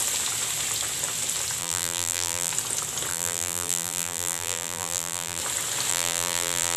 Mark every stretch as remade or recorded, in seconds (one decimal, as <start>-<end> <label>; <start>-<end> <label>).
0.0-1.6 recorded; 1.6-2.5 remade; 2.5-3.1 recorded; 3.1-5.4 remade; 5.4-5.9 recorded; 5.9-6.8 remade